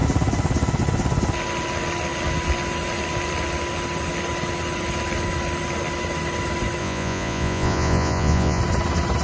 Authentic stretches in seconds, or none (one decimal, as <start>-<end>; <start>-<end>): 0.0-6.8; 8.6-9.2